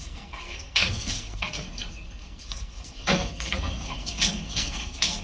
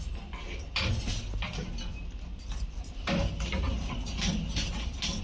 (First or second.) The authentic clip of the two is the second